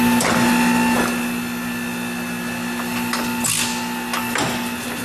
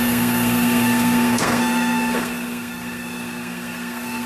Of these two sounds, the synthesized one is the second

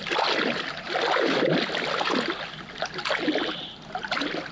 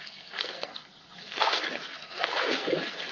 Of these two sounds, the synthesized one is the second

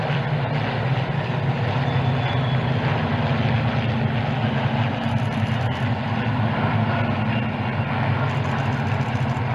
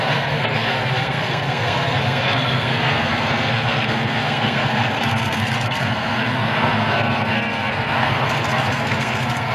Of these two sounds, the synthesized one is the second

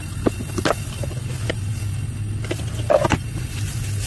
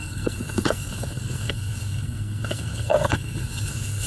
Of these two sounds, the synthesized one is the second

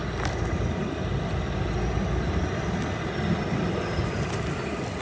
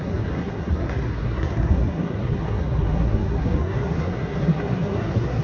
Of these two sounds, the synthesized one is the second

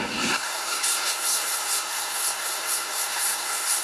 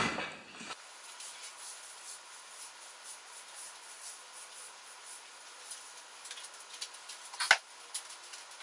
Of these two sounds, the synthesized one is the first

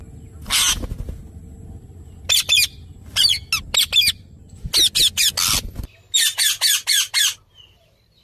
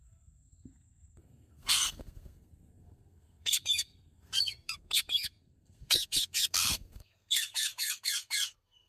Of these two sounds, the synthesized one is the second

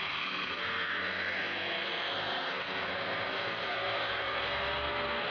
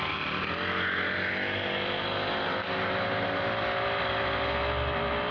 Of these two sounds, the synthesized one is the first